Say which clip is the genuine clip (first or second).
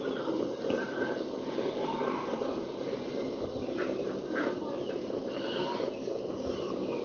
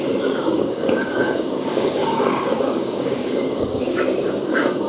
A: first